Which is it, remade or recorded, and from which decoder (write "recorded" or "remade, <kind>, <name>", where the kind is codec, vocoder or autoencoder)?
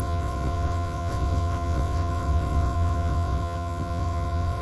remade, vocoder, WaveNeXt